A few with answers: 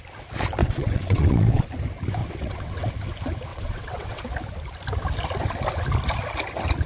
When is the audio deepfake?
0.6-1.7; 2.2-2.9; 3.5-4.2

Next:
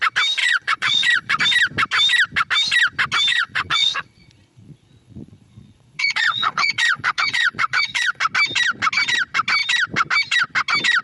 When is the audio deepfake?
0.4-1.4; 3.3-8.2

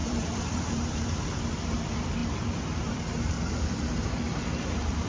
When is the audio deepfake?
0.0-5.1

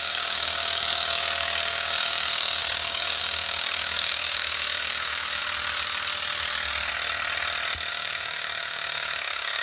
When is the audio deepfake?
0.0-5.4; 7.9-9.6

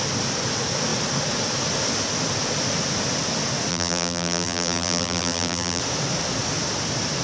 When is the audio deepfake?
3.7-5.8

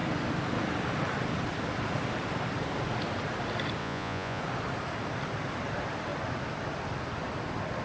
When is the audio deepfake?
3.8-4.4

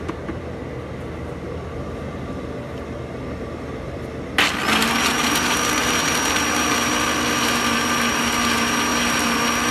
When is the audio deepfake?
none

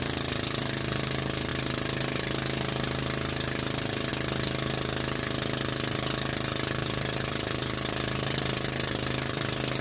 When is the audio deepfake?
6.8-9.4